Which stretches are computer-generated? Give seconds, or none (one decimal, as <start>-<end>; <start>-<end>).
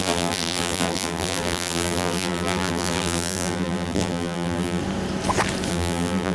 0.0-4.8; 5.7-6.3